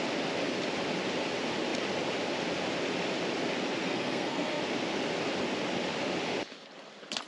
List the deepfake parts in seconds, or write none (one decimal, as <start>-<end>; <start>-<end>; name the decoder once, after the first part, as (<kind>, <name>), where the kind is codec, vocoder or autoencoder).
3.8-4.6 (codec, SNAC)